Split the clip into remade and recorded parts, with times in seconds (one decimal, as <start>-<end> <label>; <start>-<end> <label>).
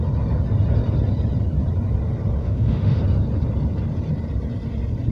0.0-2.4 recorded; 2.4-3.0 remade; 3.0-5.1 recorded